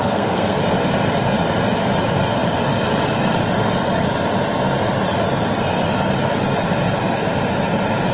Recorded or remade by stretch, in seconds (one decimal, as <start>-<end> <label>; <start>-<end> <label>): 0.0-0.6 remade; 0.6-8.1 recorded